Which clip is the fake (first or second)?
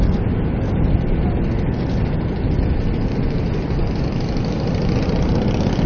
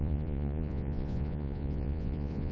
second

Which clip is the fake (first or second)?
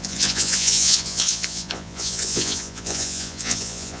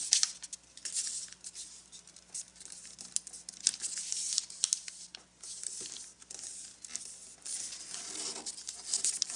first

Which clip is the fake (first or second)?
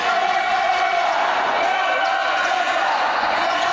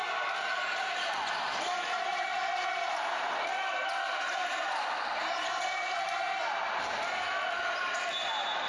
first